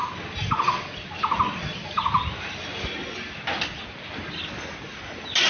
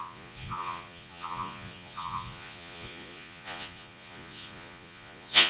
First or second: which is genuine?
first